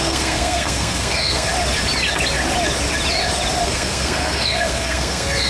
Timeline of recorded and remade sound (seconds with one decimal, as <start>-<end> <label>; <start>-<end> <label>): 0.0-1.5 remade; 1.5-3.6 recorded; 3.6-5.5 remade

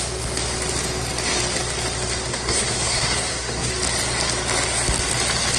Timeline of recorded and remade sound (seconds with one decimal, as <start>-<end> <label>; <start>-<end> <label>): 0.0-2.3 recorded; 2.3-3.7 remade; 3.7-5.6 recorded

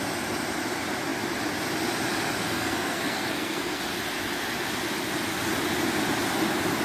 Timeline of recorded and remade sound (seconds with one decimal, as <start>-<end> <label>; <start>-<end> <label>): 0.0-2.4 recorded; 2.4-3.8 remade; 3.8-6.8 recorded

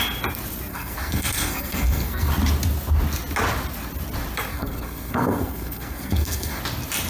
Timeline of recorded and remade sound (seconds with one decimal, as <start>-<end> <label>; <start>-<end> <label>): 0.0-0.7 recorded; 0.7-2.3 remade; 2.3-4.5 recorded; 4.5-6.6 remade; 6.6-7.1 recorded

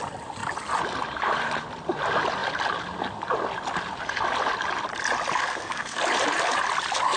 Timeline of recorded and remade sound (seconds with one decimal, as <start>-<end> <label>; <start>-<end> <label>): 0.0-5.4 recorded; 5.4-6.0 remade; 6.0-7.2 recorded

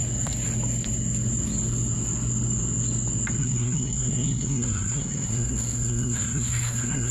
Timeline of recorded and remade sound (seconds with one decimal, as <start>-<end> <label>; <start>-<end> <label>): 0.0-3.4 recorded; 3.4-7.1 remade